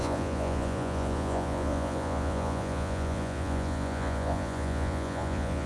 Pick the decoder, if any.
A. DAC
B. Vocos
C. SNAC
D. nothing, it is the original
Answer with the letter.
B